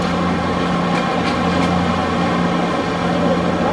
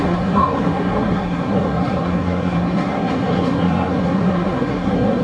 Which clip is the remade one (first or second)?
second